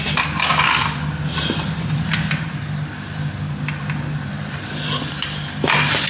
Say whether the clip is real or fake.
real